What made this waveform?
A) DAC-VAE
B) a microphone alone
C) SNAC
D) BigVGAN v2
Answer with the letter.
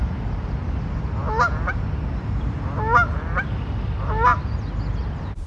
B